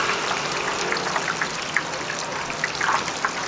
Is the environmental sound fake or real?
real